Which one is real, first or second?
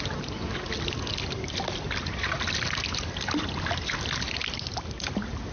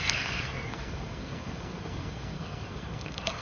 first